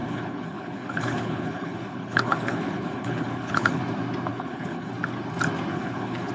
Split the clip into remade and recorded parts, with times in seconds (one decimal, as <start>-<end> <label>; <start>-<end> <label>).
0.0-3.8 remade; 3.8-4.3 recorded; 4.3-4.9 remade; 4.9-5.7 recorded; 5.7-6.3 remade